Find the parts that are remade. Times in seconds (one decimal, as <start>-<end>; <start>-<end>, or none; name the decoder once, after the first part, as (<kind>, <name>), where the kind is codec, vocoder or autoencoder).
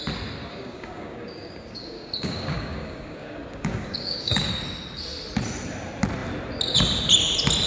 0.5-4.5 (codec, DAC)